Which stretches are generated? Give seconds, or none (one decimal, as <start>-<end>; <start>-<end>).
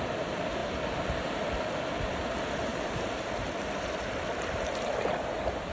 0.0-5.7